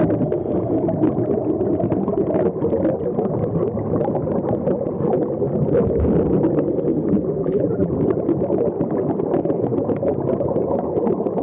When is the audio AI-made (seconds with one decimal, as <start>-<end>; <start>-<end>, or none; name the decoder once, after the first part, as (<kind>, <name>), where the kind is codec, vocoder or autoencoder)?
7.4-7.9 (vocoder, BigVGAN v2)